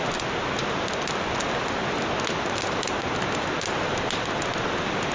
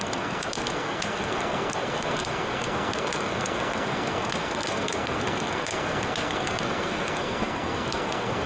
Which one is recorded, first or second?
first